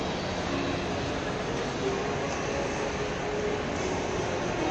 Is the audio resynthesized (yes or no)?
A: no